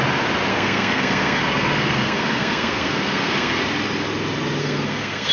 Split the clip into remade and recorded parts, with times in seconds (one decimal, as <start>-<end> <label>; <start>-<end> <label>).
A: 0.0-0.5 recorded; 0.5-3.6 remade; 3.6-4.6 recorded; 4.6-5.3 remade